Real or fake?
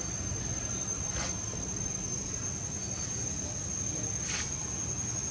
real